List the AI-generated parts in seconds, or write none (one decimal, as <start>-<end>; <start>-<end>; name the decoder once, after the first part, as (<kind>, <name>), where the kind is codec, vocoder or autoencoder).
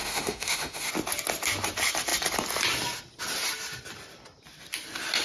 0.0-0.9 (autoencoder, DAC-VAE)